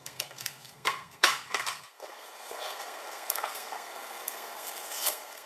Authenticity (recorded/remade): remade